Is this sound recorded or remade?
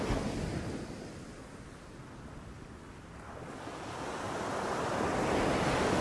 recorded